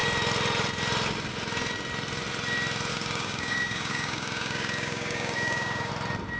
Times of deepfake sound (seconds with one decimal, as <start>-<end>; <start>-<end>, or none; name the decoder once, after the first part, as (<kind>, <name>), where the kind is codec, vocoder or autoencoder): 2.9-5.9 (codec, DAC)